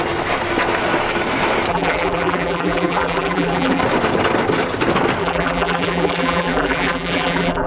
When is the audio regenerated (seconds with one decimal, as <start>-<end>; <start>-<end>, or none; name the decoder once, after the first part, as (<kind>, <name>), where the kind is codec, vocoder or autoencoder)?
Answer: 1.7-3.8 (vocoder, BigVGAN v2); 5.2-7.7